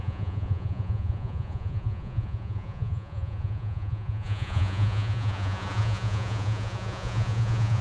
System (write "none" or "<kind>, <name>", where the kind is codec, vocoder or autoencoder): vocoder, Vocos